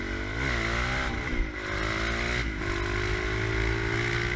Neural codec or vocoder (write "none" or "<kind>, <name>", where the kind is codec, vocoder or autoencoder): none